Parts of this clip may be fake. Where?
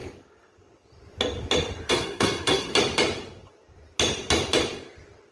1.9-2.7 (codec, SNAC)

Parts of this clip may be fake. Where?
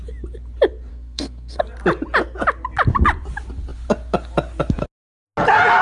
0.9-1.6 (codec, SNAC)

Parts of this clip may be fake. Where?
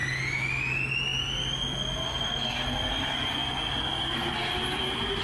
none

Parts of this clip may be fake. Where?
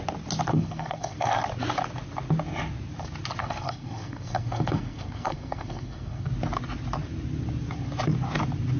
0.5-1.3 (codec, SNAC); 3.4-6.3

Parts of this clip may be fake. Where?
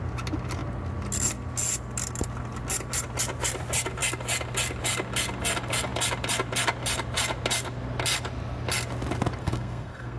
9.4-10.2 (codec, SNAC)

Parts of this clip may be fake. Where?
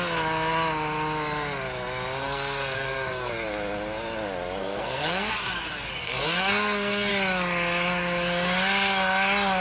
2.2-3.3 (codec, SNAC); 4.6-5.3; 6.0-7.1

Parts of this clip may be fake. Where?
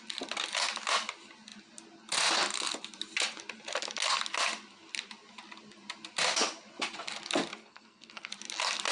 7.6-8.3 (codec, SNAC)